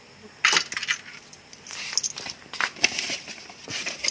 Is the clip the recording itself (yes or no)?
yes